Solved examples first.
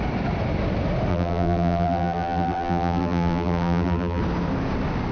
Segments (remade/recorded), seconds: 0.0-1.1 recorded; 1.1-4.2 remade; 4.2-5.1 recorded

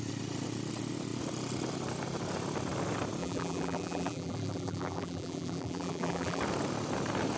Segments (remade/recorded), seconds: 0.0-3.2 recorded; 3.2-6.4 remade; 6.4-7.4 recorded

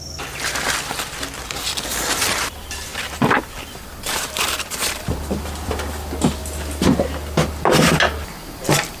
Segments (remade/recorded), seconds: 0.0-6.4 remade; 6.4-8.6 recorded; 8.6-9.0 remade

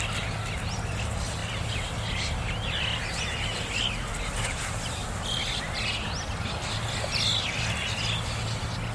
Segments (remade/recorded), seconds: 0.0-8.9 recorded